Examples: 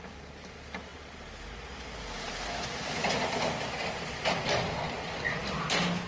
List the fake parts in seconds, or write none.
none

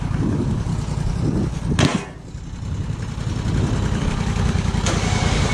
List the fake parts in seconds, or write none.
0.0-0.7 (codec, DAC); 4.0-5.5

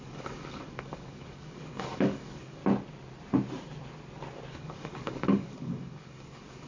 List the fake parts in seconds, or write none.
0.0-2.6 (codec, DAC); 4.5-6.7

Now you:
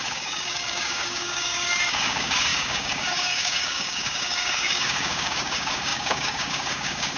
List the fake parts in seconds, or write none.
0.0-7.2 (codec, DAC)

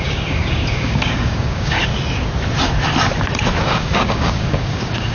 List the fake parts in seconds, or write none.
0.0-1.8 (codec, DAC); 3.6-5.1

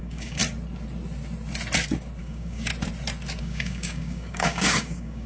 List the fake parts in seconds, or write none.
0.0-0.4 (codec, DAC); 2.2-2.7; 3.4-5.3